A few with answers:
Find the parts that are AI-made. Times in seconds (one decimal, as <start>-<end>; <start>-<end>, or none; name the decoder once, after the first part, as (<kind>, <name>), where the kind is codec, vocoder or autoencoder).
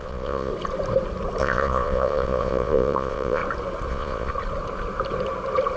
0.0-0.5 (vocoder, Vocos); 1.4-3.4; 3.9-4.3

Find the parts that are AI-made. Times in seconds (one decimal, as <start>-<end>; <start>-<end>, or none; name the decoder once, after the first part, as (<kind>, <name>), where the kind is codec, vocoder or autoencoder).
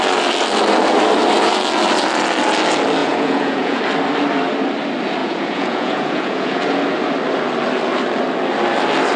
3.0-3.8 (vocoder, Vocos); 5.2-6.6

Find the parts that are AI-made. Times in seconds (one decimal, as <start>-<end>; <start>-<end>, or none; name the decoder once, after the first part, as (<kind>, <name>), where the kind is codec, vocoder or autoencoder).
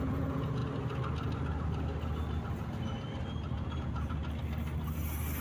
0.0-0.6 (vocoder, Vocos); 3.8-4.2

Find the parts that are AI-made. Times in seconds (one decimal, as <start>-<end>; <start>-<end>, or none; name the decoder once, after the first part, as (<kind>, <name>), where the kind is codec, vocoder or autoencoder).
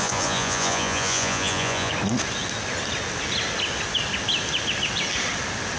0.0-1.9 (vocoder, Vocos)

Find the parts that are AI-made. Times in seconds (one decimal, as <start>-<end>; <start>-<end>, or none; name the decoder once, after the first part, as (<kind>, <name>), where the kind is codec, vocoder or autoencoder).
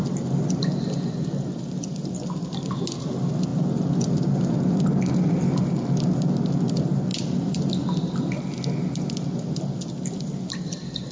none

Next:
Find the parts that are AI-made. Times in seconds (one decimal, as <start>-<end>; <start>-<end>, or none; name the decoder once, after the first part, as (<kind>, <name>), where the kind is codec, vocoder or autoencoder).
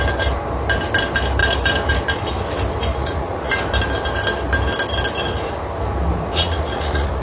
2.9-3.5 (vocoder, Vocos); 6.3-7.2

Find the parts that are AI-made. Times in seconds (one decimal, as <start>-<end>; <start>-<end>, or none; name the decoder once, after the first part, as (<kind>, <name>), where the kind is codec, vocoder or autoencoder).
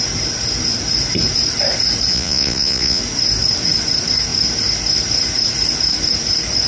2.1-3.0 (vocoder, Vocos)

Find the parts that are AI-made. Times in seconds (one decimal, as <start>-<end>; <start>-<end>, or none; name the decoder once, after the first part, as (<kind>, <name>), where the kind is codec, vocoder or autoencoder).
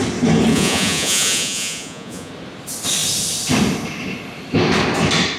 0.5-2.3 (vocoder, Vocos)